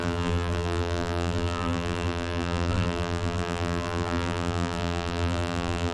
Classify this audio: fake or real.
fake